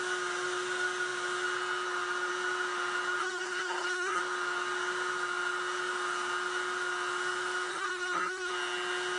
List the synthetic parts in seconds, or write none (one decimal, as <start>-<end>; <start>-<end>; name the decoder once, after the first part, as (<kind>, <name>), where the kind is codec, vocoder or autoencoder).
3.2-4.2 (codec, SNAC); 7.7-8.5